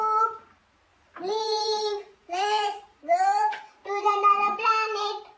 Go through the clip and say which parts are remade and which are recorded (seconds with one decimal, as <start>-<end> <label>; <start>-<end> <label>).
0.0-0.9 recorded; 0.9-4.1 remade; 4.1-5.4 recorded